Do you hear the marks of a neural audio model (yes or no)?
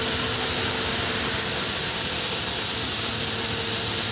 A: no